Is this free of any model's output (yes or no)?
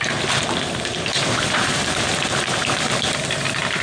yes